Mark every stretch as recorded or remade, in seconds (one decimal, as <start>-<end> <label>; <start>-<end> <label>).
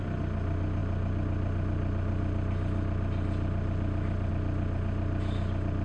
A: 0.0-5.8 recorded